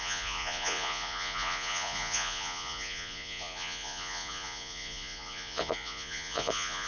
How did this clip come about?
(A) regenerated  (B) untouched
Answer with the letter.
A